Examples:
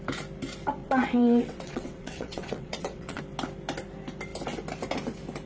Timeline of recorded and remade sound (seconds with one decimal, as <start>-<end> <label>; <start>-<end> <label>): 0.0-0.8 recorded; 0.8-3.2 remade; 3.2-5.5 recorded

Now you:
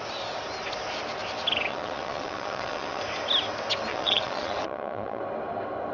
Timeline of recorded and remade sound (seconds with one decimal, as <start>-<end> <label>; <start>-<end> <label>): 0.0-1.7 recorded; 1.7-3.0 remade; 3.0-3.9 recorded; 3.9-5.2 remade; 5.2-5.9 recorded

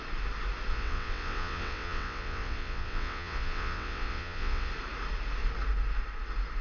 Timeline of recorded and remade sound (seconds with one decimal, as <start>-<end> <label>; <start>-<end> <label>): 0.0-0.7 recorded; 0.7-4.7 remade; 4.7-6.6 recorded

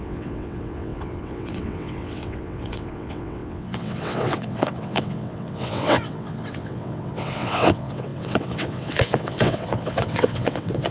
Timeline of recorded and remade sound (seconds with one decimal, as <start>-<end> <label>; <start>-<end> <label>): 0.0-10.9 remade